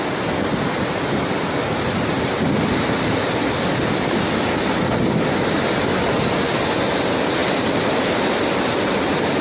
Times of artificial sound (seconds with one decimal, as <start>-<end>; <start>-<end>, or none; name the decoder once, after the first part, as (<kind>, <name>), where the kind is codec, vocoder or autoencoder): 7.4-8.0 (vocoder, BigVGAN v2)